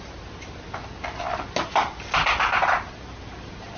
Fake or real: real